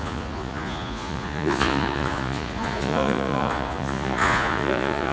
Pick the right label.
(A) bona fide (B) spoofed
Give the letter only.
B